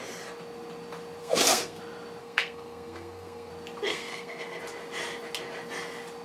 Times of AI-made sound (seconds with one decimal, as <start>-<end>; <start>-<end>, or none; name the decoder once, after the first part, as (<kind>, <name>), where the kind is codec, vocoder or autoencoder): 1.2-1.8 (codec, SNAC); 2.2-3.5; 3.9-4.6